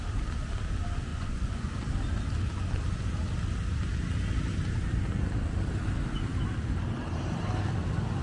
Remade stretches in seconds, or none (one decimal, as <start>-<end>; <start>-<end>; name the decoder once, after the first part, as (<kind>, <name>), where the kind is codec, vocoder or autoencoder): 1.1-1.8 (vocoder, Vocos)